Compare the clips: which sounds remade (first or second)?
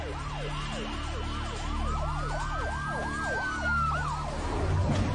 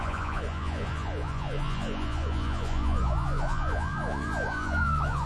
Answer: second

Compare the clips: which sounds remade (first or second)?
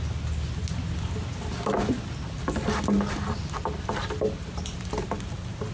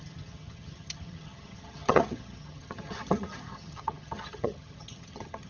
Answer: second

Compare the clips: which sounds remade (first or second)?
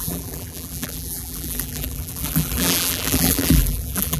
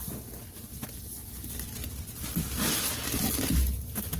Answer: first